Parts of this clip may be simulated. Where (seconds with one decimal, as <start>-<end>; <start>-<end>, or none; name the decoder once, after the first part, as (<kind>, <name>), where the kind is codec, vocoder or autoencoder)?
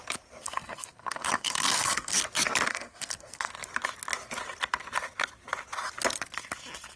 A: 0.4-2.2 (codec, SNAC); 2.7-3.5